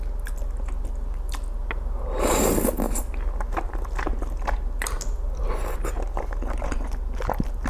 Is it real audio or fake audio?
real